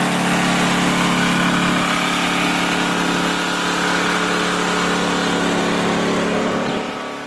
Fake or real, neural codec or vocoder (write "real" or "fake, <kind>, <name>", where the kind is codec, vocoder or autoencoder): real